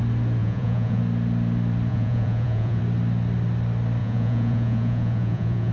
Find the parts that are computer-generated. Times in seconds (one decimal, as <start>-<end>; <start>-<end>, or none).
0.4-1.0; 1.9-2.8; 4.0-5.7